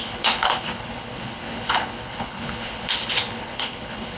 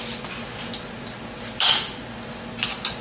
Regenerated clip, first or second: first